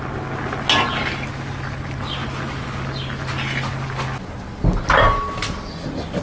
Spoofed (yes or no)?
no